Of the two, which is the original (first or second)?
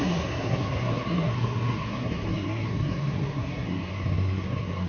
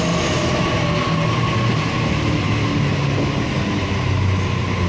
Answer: second